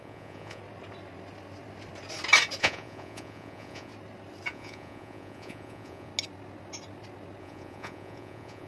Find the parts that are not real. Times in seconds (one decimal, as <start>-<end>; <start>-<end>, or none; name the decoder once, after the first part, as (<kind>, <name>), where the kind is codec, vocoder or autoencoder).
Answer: 0.0-0.6 (vocoder, Vocos); 2.6-3.9; 4.5-6.1; 7.4-8.7